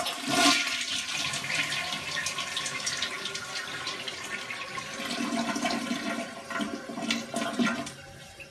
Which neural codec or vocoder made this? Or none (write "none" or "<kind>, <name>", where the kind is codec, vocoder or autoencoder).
none